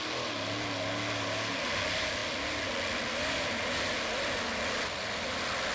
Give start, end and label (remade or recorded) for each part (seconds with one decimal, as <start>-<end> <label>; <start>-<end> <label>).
0.0-5.7 recorded